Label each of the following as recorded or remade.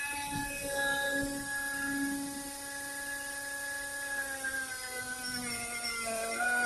recorded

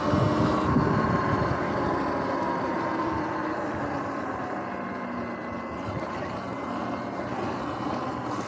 recorded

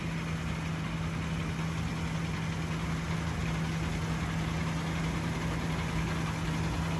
recorded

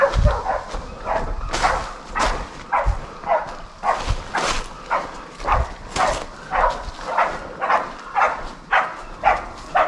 recorded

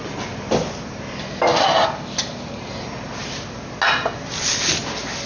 recorded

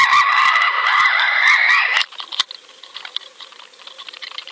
recorded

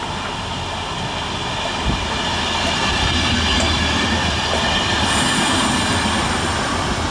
recorded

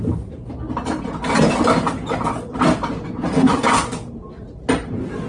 recorded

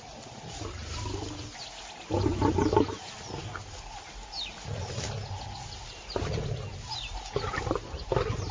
recorded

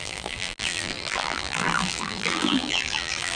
remade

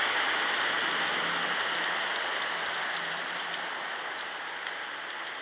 recorded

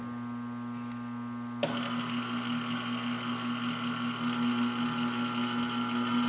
recorded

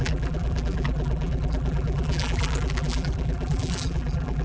remade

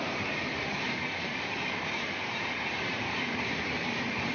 remade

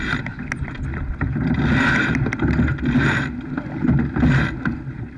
recorded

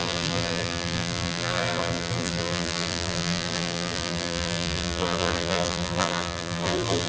remade